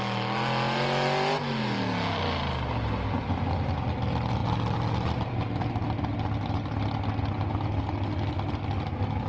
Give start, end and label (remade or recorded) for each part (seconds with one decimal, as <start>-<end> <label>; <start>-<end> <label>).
0.0-9.3 recorded